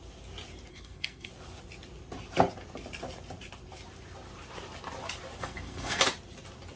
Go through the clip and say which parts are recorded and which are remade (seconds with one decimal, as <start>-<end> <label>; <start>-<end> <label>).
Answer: 0.0-0.7 recorded; 0.7-1.3 remade; 1.3-5.4 recorded; 5.4-6.0 remade; 6.0-6.8 recorded